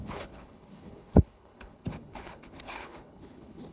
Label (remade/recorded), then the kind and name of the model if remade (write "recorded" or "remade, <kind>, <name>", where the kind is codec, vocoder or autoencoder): remade, codec, HILCodec